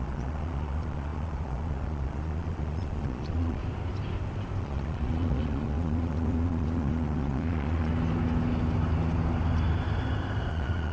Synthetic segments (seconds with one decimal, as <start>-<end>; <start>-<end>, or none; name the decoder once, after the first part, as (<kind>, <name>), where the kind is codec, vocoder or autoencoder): 0.0-3.6 (vocoder, Vocos); 4.6-7.9; 10.5-10.9